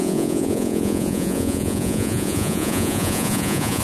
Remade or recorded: remade